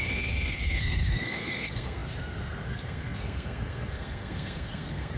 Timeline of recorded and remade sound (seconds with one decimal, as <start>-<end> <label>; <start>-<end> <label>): 0.0-5.2 remade